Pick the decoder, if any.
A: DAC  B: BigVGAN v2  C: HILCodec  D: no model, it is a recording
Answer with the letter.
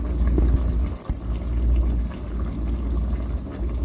D